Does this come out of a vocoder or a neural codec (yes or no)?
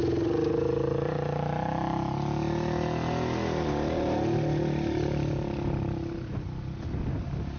no